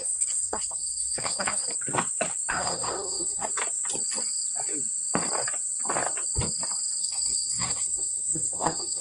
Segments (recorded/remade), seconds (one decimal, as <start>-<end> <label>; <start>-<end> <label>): 0.0-1.6 remade; 1.6-2.5 recorded; 2.5-3.5 remade; 3.5-7.0 recorded; 7.0-9.0 remade